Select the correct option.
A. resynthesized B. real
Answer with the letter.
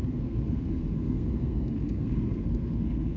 A